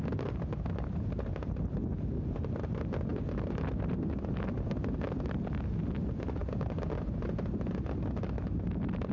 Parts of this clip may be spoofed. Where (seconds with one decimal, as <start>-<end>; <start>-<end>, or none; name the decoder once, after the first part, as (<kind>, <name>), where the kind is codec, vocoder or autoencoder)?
none